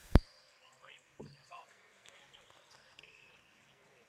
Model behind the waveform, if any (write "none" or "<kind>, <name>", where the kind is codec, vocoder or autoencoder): codec, SNAC